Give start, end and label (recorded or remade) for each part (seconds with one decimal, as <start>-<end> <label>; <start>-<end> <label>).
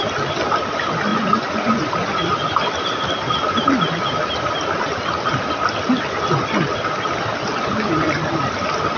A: 0.0-1.1 recorded; 1.1-1.9 remade; 1.9-9.0 recorded